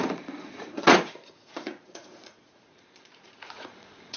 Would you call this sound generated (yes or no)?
yes